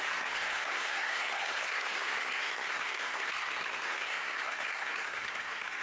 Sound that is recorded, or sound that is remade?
remade